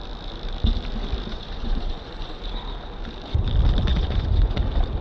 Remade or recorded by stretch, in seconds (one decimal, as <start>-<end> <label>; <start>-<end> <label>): 0.0-1.3 recorded; 1.3-2.4 remade; 2.4-3.9 recorded; 3.9-4.6 remade; 4.6-5.0 recorded